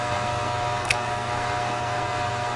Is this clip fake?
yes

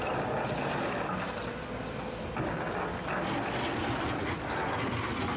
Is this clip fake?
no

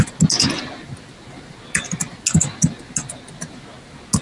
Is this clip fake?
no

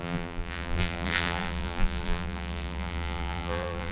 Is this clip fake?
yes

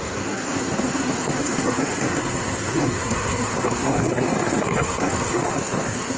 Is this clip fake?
yes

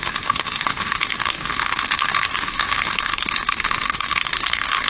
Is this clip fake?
yes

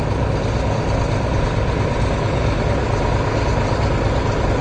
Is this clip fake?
no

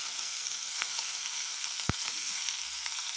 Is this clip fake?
yes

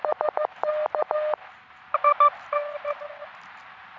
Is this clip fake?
no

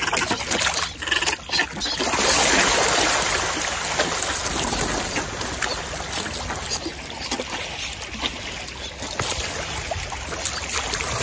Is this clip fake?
no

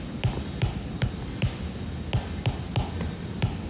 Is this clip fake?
no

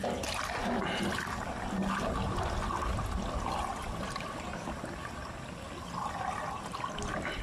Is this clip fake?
no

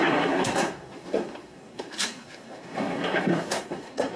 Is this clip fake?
yes